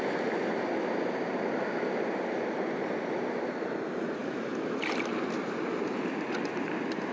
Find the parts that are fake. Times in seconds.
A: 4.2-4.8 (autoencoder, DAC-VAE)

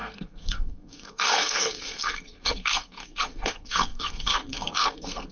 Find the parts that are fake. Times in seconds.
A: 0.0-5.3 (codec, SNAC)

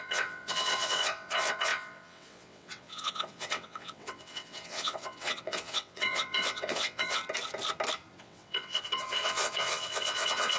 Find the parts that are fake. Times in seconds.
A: 0.0-7.2 (vocoder, WaveNeXt); 8.2-10.6

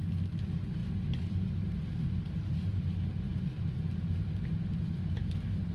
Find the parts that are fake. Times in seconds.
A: none

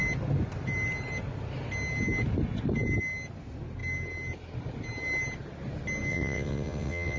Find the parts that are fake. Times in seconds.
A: 6.1-7.2 (vocoder, WaveNeXt)